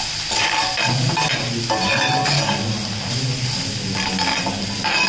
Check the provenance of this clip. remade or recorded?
recorded